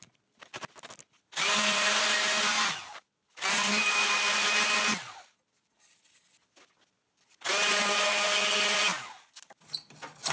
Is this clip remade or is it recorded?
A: recorded